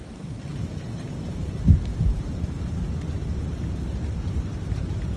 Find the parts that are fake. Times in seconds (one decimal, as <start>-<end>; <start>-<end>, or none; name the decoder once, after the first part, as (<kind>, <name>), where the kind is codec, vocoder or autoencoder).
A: 0.5-1.4 (vocoder, BigVGAN v2); 1.9-5.2